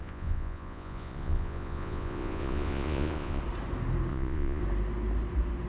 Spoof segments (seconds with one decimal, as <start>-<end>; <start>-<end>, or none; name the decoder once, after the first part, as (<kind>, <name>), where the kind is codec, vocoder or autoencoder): 0.0-3.4 (vocoder, Vocos); 4.1-4.6